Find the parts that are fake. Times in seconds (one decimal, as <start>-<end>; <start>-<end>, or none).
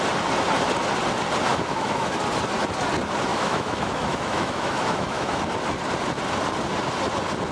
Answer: 1.5-2.2; 3.3-5.4